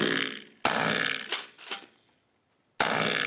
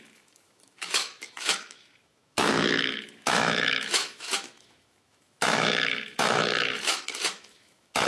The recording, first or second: first